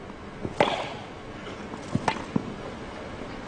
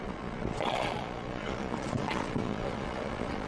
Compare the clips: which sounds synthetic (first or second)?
second